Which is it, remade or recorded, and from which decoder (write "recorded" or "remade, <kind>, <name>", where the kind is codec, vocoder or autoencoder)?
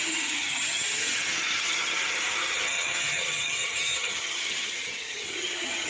remade, vocoder, HiFi-GAN